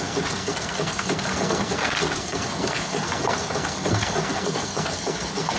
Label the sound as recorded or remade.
remade